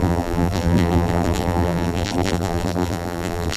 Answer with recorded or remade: remade